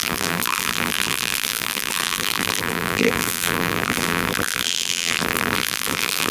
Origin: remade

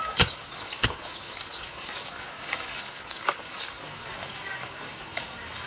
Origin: remade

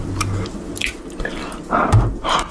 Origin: recorded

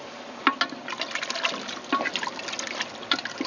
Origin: recorded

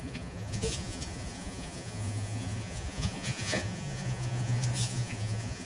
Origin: remade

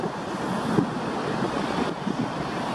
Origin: recorded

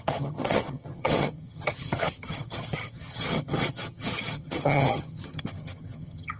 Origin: remade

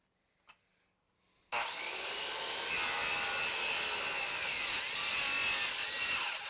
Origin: recorded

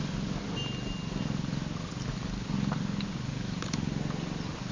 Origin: recorded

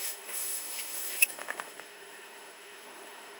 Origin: remade